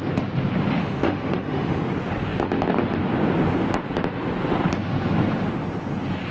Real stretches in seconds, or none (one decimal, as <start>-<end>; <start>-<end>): 0.0-0.8; 1.8-6.3